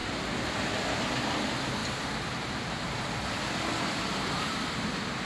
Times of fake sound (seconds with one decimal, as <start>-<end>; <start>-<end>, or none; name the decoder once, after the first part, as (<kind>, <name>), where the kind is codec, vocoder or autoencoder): 0.0-1.0 (vocoder, BigVGAN v2); 1.8-4.1